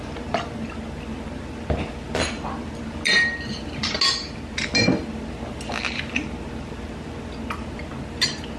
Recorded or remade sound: recorded